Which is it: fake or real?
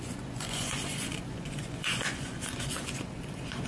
fake